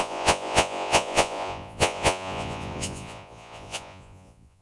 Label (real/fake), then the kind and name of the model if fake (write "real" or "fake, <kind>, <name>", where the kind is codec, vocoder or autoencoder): fake, vocoder, Vocos